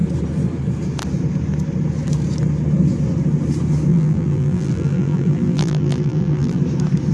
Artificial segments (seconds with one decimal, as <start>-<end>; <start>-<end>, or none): 3.9-6.6